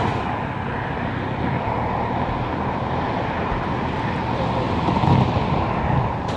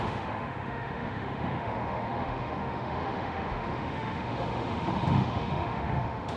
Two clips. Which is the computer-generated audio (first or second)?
second